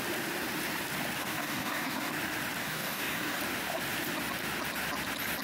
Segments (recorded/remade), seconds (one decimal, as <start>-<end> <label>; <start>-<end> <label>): 0.0-1.2 recorded; 1.2-2.1 remade; 2.1-2.6 recorded; 2.6-3.4 remade; 3.4-5.4 recorded